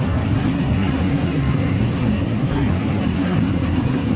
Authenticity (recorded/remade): remade